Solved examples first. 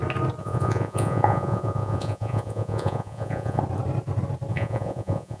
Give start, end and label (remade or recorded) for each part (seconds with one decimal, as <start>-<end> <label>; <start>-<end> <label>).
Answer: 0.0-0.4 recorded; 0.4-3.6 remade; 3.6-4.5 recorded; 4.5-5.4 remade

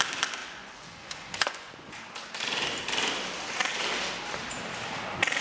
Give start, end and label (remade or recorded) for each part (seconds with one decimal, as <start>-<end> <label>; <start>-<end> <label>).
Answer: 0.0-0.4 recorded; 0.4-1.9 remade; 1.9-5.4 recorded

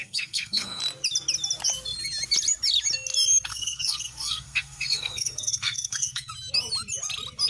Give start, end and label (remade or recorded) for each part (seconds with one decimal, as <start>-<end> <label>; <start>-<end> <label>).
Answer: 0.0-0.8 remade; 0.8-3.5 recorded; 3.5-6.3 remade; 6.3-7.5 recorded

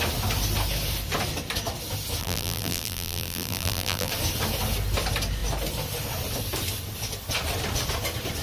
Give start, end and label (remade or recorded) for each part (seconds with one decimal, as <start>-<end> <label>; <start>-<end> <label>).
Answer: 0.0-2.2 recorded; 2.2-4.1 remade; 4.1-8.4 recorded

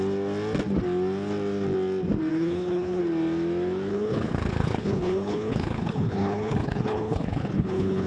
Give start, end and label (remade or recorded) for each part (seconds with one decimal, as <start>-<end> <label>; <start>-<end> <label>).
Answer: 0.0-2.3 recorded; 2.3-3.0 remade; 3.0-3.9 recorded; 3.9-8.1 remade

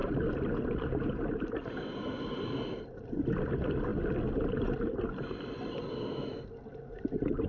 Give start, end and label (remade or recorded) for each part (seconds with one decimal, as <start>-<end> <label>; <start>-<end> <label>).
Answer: 0.0-7.5 recorded

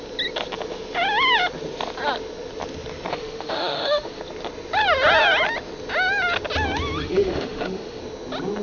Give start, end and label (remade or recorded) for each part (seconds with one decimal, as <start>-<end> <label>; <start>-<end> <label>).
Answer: 0.0-3.1 recorded; 3.1-4.2 remade; 4.2-7.0 recorded; 7.0-8.0 remade; 8.0-8.6 recorded

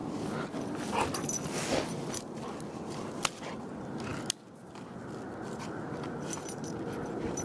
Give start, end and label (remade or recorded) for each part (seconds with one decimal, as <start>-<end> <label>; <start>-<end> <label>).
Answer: 0.0-7.4 recorded